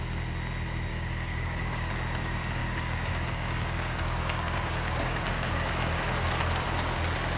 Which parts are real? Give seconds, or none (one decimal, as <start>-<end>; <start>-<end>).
0.0-0.9; 1.9-2.6; 5.7-7.4